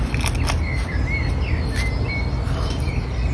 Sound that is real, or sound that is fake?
real